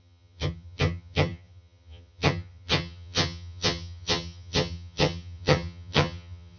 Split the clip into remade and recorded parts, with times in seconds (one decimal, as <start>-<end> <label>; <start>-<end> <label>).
0.0-6.6 remade